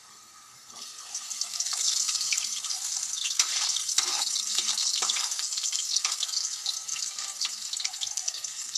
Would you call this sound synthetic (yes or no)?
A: yes